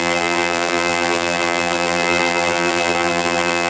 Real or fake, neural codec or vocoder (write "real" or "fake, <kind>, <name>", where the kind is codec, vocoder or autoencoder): fake, vocoder, BigVGAN v2